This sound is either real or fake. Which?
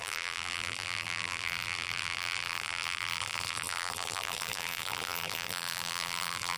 fake